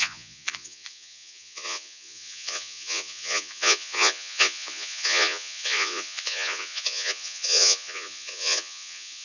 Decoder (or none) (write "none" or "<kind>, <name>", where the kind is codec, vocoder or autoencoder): vocoder, Vocos